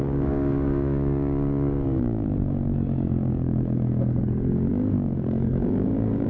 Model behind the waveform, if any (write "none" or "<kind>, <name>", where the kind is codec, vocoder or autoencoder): codec, DAC